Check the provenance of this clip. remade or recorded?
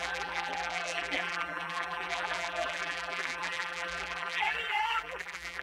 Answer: remade